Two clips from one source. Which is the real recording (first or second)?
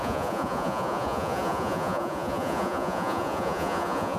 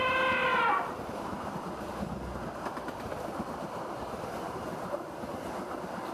second